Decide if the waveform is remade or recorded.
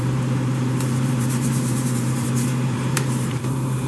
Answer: remade